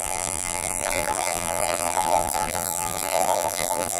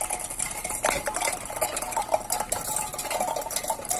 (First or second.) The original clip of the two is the second